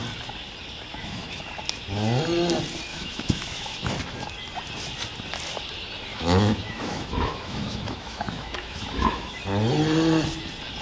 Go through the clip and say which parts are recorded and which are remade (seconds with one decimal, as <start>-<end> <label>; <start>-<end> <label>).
0.0-0.9 recorded; 0.9-1.4 remade; 1.4-2.9 recorded; 2.9-3.9 remade; 3.9-6.1 recorded; 6.1-9.3 remade; 9.3-10.8 recorded